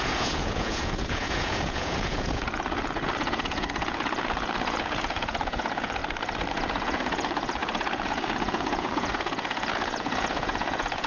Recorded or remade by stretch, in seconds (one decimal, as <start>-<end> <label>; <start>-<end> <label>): 0.0-6.0 remade; 6.0-6.5 recorded; 6.5-11.1 remade